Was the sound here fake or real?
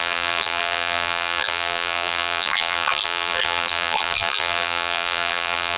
fake